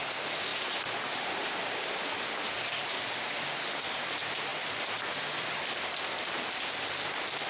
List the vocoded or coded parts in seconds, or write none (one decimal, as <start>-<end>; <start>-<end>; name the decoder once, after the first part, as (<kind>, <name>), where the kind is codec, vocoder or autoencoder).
2.0-2.9 (vocoder, BigVGAN v2); 4.5-6.7